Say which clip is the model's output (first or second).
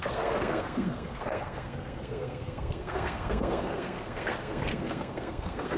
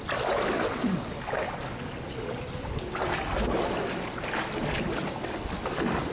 first